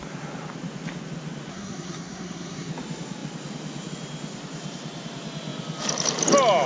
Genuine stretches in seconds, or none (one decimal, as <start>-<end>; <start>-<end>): 0.0-1.5; 2.7-6.7

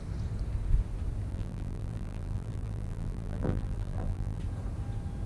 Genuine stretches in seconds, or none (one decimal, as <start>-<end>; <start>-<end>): 0.0-1.3; 4.4-5.3